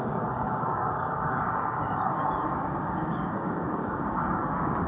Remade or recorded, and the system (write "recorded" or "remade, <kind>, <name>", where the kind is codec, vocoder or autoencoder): remade, codec, DAC